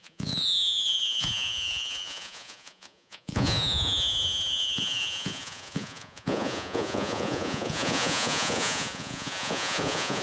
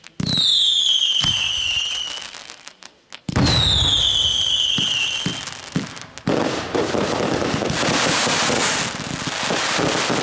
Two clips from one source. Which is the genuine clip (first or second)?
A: second